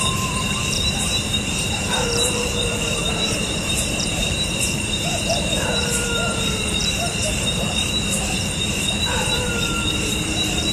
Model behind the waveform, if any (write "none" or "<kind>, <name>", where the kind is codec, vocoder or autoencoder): vocoder, BigVGAN v2